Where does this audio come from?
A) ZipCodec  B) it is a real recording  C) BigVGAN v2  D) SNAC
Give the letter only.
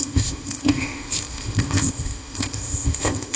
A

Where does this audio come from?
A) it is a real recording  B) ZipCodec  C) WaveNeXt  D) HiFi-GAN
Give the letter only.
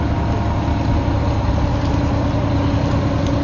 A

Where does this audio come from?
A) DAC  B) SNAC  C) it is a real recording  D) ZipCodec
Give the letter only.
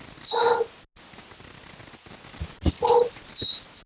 C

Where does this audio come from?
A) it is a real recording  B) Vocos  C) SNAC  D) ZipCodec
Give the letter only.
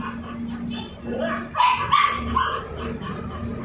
A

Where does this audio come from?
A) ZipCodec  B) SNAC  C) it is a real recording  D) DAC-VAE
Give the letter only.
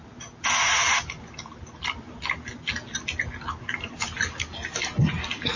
C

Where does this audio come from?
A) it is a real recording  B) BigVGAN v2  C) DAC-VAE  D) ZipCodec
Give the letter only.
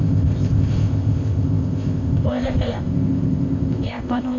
D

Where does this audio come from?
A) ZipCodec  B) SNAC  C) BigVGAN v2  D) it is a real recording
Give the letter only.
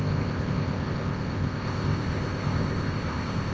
A